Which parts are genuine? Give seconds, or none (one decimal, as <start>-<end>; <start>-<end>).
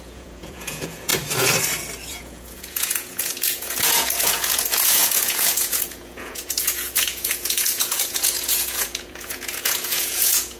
1.1-2.1